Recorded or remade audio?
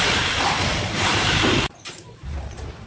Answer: remade